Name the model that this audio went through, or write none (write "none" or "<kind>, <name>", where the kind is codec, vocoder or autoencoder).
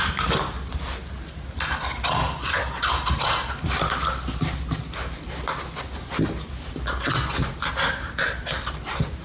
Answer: none